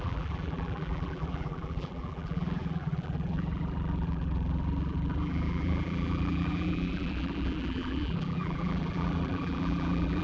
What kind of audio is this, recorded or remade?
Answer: remade